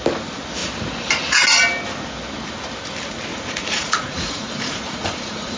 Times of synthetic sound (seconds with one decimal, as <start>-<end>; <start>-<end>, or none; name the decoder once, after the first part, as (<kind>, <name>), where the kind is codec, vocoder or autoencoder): 3.3-5.6 (vocoder, Vocos)